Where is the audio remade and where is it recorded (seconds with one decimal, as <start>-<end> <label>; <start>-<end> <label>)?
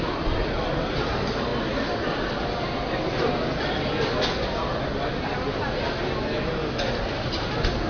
0.0-7.9 recorded